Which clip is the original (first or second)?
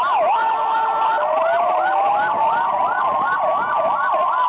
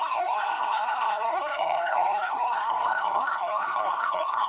first